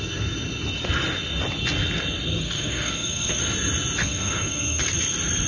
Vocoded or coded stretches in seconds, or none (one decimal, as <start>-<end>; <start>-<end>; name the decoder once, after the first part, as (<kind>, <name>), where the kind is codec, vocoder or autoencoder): 2.4-3.4 (codec, SNAC); 4.0-4.8